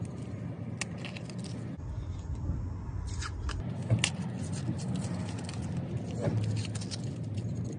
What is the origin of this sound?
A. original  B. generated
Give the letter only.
A